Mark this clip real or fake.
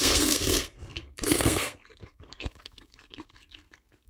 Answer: fake